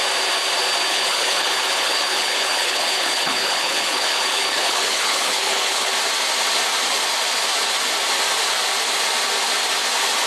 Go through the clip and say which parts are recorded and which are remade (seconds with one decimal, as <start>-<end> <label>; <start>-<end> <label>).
0.0-0.9 recorded; 0.9-5.9 remade; 5.9-10.3 recorded

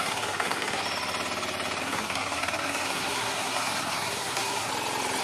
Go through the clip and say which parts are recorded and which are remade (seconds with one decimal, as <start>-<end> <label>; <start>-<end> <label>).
0.0-0.8 remade; 0.8-1.8 recorded; 1.8-4.7 remade; 4.7-5.2 recorded

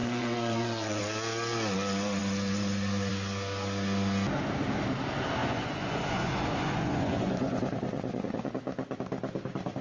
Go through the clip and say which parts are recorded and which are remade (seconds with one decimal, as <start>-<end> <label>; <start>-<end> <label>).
0.0-1.0 remade; 1.0-5.4 recorded; 5.4-8.5 remade; 8.5-9.8 recorded

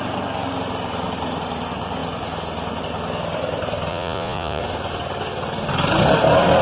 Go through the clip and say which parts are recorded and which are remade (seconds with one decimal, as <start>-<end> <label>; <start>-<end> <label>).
0.0-3.9 recorded; 3.9-4.6 remade; 4.6-6.6 recorded